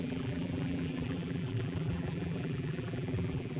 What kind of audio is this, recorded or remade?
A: remade